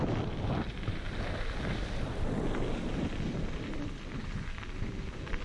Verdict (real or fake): real